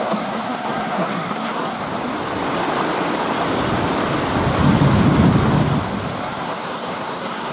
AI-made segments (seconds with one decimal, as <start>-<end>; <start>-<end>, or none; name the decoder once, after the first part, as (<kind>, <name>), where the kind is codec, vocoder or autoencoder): 0.0-1.8 (codec, SNAC); 6.2-7.5